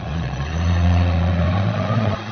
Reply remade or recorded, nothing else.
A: remade